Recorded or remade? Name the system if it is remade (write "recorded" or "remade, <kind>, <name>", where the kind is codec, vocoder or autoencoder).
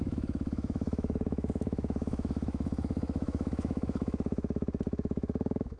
remade, autoencoder, DAC-VAE